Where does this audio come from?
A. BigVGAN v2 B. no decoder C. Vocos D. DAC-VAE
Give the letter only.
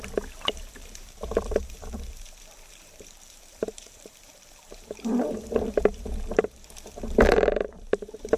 A